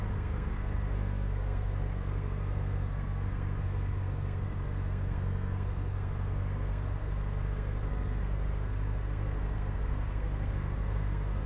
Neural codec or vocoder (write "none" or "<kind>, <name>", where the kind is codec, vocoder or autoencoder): codec, SNAC